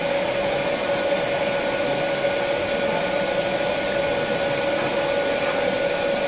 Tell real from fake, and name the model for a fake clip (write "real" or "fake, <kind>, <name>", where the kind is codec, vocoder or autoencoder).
real